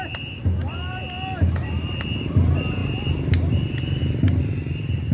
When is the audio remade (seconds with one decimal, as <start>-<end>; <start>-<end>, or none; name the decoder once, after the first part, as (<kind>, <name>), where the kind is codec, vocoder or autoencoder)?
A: none